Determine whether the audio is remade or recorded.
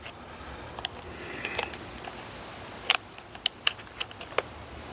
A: recorded